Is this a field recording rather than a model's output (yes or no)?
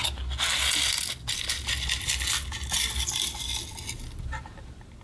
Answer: yes